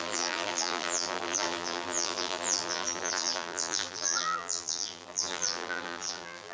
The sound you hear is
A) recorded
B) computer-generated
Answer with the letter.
B